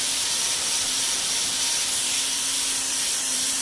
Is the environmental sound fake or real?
fake